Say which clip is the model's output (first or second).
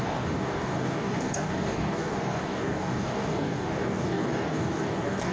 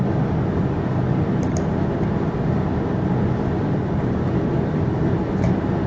first